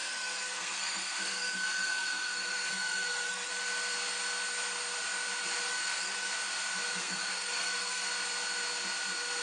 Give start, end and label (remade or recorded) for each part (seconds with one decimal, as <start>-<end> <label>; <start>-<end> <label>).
0.0-3.5 remade; 3.5-5.7 recorded; 5.7-6.3 remade; 6.3-7.0 recorded; 7.0-8.1 remade; 8.1-9.4 recorded